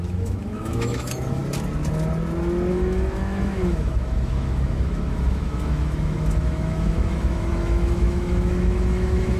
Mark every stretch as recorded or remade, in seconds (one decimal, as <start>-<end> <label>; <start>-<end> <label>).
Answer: 0.0-1.4 remade; 1.4-2.7 recorded; 2.7-9.4 remade